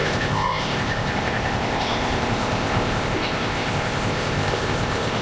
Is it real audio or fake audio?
fake